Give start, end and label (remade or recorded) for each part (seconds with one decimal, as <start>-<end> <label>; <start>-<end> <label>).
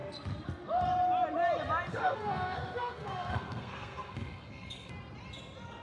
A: 0.0-1.9 recorded; 1.9-4.9 remade; 4.9-5.8 recorded